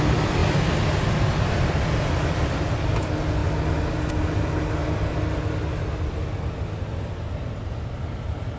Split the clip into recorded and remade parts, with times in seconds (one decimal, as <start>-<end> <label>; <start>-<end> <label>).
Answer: 0.0-8.6 recorded